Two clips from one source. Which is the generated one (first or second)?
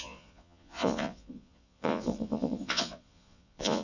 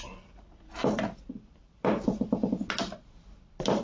first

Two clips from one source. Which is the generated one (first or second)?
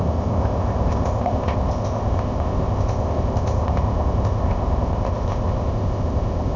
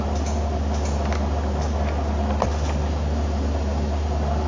first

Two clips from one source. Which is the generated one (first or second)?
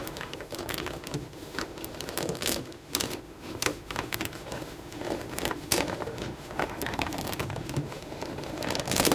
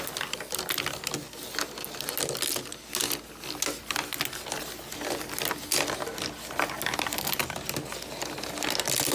first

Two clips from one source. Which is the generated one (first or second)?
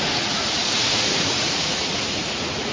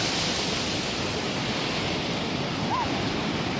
first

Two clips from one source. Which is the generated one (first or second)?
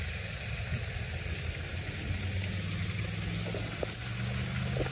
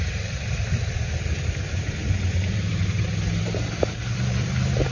second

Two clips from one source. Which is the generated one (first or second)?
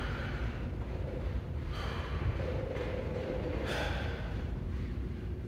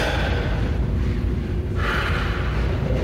first